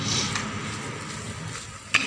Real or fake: real